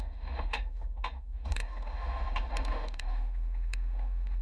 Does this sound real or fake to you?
fake